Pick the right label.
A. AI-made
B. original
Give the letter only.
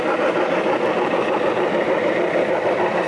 B